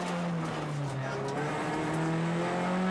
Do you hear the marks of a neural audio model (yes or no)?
no